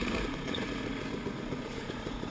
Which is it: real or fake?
fake